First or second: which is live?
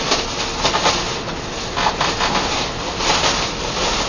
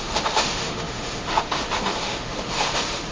first